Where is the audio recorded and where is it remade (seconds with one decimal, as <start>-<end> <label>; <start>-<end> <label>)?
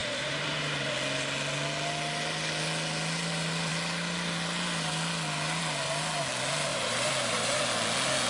0.0-0.9 remade; 0.9-6.7 recorded; 6.7-7.6 remade; 7.6-8.3 recorded